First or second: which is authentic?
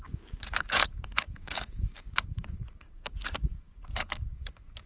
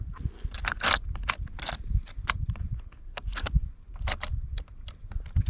second